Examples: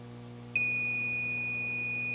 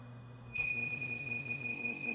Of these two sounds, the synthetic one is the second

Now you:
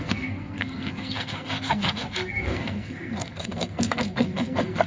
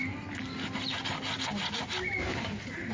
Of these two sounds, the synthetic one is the first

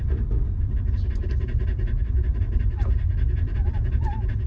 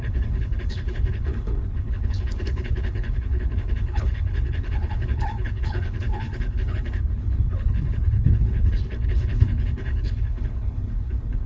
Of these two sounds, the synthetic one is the second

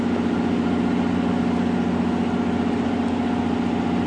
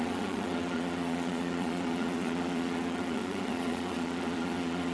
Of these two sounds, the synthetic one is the second